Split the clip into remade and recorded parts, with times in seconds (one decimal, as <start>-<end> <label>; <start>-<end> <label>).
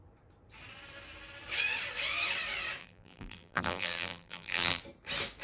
0.0-2.8 recorded; 2.8-4.8 remade; 4.8-5.4 recorded